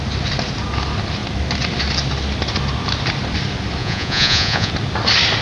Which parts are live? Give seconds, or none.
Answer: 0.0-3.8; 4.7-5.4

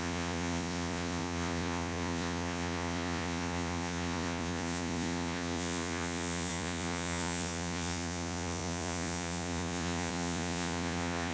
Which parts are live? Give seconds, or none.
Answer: none

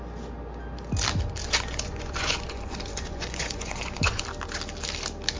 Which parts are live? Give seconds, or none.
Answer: 0.0-1.4; 4.2-5.4

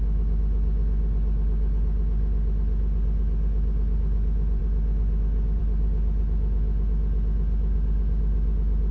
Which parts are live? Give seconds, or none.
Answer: 0.0-8.9

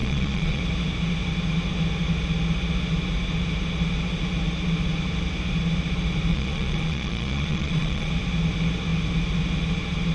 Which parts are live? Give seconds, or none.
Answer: 0.6-6.3; 8.1-10.1

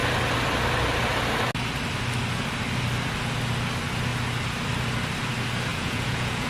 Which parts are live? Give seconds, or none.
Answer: 0.0-5.7